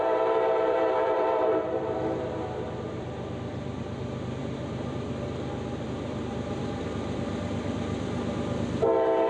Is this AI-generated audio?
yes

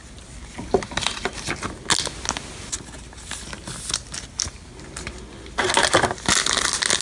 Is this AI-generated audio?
no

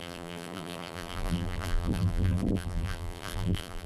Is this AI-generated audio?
yes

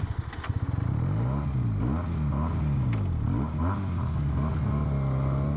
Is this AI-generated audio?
no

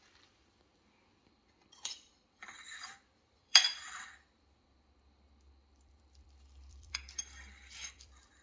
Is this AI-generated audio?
yes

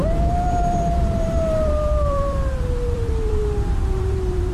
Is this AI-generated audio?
yes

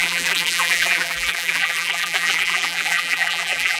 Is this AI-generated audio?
yes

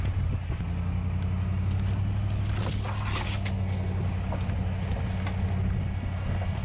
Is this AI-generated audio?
no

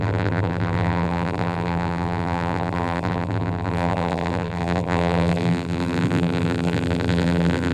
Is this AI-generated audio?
yes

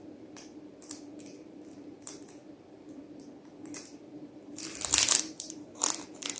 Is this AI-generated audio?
yes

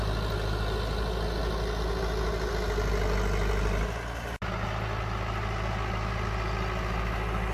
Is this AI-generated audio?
no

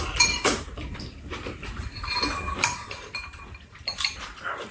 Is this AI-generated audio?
yes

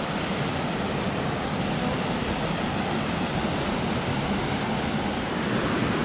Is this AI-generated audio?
no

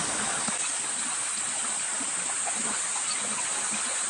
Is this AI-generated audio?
no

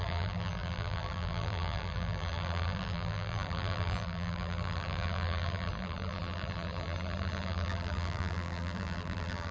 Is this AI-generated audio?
yes